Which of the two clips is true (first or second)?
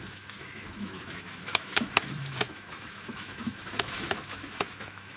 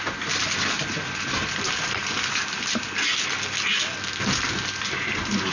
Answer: second